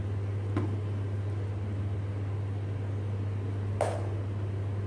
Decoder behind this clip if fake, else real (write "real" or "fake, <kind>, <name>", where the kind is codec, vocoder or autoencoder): real